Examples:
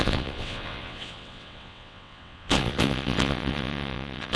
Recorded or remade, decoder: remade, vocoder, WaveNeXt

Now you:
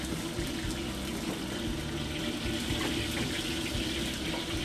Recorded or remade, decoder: recorded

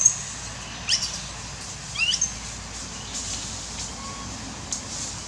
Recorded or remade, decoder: recorded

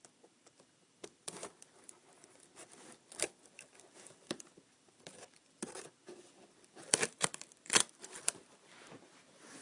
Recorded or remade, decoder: remade, vocoder, BigVGAN v2